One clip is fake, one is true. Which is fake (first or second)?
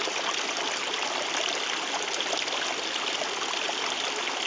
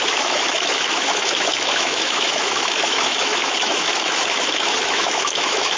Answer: second